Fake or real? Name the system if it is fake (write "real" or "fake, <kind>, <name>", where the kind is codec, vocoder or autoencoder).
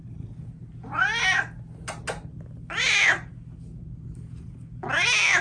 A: real